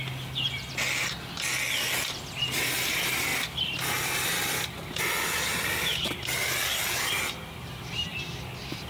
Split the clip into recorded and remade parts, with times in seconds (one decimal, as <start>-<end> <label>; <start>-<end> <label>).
0.0-8.9 recorded